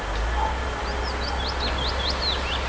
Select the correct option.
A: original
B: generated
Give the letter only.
A